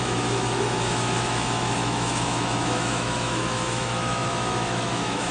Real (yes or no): no